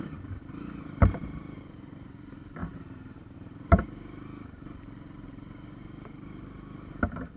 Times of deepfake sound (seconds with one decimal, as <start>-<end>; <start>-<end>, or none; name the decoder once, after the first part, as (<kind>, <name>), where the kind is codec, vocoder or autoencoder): none